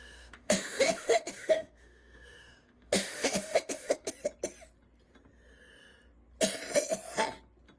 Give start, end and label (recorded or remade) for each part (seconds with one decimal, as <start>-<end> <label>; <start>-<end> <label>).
0.0-4.1 remade; 4.1-7.8 recorded